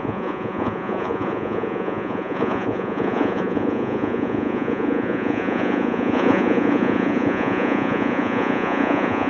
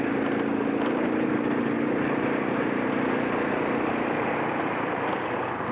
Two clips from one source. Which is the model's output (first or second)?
first